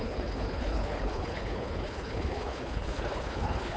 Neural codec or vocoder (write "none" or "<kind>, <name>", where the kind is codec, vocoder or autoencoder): codec, HILCodec